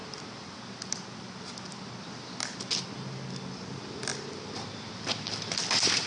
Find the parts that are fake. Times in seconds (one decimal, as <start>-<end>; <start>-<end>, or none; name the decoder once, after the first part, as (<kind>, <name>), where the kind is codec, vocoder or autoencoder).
4.1-6.1 (vocoder, BigVGAN v2)